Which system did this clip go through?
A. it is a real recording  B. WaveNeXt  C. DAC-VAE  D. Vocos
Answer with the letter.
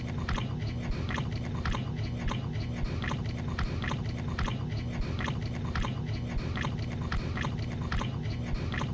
A